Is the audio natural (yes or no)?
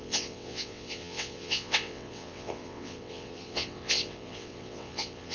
no